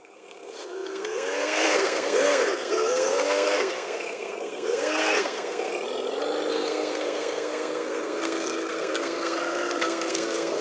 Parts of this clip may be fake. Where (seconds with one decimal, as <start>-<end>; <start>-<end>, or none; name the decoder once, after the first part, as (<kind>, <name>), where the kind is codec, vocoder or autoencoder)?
0.0-5.7 (codec, SNAC); 6.5-10.6